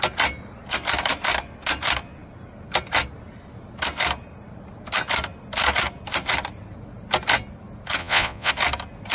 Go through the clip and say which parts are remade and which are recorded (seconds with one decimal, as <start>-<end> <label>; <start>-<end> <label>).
0.0-8.0 recorded; 8.0-8.5 remade; 8.5-9.1 recorded